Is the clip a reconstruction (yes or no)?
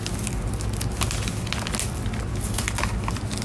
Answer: no